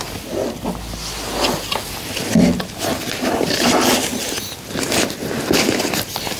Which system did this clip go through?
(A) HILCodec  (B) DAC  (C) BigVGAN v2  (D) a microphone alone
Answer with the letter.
D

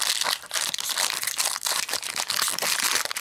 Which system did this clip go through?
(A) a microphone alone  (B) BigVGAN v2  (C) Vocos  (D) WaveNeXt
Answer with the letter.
A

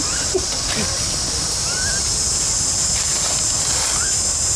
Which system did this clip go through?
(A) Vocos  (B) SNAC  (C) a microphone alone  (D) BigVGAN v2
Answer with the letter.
C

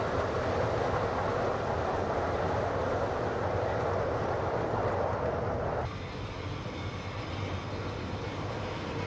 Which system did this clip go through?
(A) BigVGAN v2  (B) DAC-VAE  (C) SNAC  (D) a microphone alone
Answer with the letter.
D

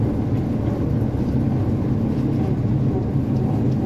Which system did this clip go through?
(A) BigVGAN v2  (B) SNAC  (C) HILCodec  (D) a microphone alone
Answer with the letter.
D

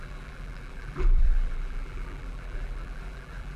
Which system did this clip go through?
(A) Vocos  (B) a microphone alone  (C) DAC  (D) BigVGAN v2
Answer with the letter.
D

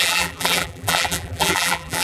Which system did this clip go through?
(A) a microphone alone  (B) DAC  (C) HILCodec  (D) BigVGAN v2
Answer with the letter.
D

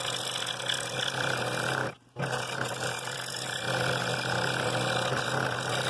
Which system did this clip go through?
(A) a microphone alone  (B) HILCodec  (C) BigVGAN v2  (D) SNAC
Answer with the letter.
A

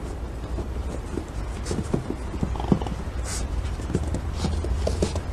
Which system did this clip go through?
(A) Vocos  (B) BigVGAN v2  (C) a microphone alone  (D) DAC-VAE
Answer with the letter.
C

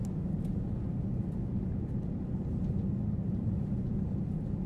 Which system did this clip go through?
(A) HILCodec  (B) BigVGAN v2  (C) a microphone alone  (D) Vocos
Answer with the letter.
C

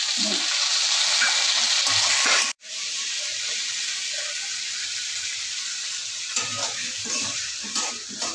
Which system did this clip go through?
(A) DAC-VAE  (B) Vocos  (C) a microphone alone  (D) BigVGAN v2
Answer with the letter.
D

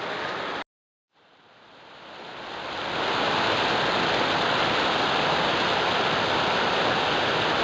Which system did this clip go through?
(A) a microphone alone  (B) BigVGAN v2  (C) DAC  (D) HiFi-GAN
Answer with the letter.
A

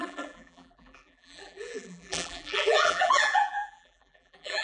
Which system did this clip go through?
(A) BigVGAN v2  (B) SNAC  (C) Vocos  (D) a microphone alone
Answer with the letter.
A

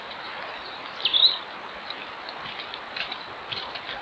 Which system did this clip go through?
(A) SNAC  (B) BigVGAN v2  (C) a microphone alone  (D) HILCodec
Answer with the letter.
C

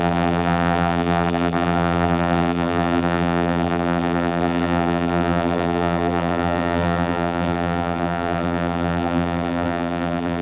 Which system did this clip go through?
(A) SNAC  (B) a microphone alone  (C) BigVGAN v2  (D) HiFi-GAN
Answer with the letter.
C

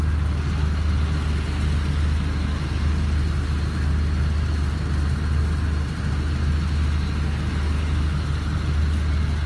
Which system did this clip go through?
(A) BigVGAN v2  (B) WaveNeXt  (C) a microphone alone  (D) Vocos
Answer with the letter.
C